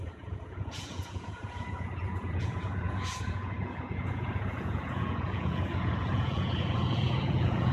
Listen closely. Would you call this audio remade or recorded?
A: remade